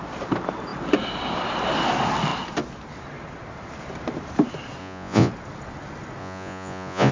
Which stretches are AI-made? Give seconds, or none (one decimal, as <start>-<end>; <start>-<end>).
4.8-5.3; 6.2-7.1